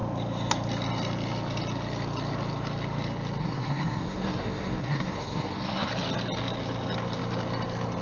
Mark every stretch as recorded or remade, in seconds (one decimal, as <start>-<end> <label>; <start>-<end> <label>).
0.0-3.4 recorded; 3.4-5.9 remade; 5.9-8.0 recorded